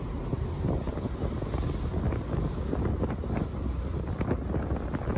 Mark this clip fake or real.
fake